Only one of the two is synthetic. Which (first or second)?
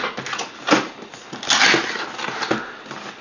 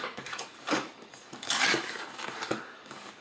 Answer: second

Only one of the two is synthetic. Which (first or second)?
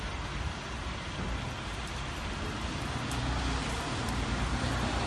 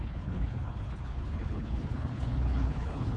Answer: second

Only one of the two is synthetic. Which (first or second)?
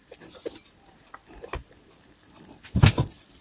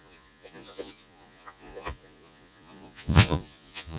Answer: second